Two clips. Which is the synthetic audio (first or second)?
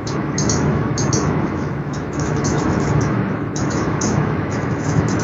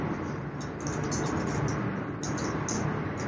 first